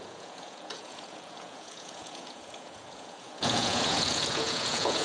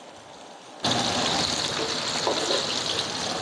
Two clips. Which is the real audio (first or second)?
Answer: second